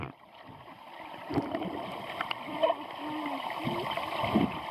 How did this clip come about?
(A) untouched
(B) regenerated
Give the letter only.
A